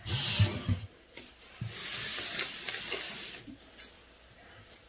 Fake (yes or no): no